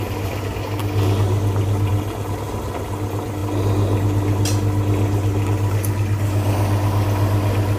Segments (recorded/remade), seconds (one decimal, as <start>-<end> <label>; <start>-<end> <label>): 0.0-7.8 recorded